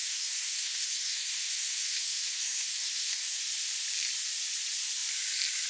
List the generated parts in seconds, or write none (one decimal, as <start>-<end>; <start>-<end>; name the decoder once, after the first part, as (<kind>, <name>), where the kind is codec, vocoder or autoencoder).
0.0-3.4 (codec, SNAC)